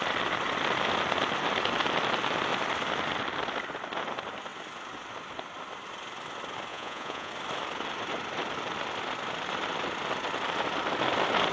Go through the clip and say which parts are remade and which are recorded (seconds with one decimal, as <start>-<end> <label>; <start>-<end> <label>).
0.0-6.7 recorded; 6.7-7.3 remade; 7.3-11.5 recorded